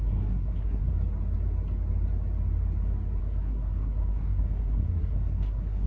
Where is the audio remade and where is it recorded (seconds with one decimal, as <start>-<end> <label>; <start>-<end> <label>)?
0.0-0.9 remade; 0.9-3.2 recorded; 3.2-5.9 remade